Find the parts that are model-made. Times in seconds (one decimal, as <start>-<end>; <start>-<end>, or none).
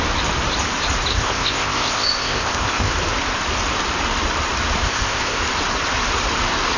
1.1-2.9; 4.8-5.4